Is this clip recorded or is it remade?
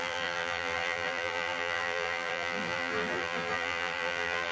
remade